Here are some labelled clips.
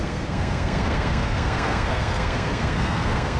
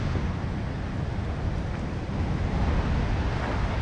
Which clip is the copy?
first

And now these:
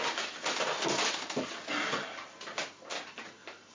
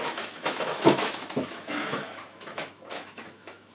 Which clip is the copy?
second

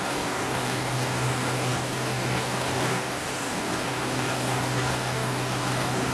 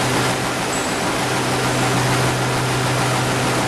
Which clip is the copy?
first